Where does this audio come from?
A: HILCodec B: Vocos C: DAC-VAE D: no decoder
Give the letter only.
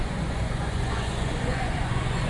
B